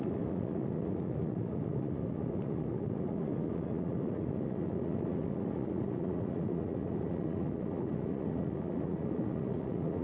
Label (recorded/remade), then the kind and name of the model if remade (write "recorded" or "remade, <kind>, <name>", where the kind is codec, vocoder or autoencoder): remade, vocoder, Vocos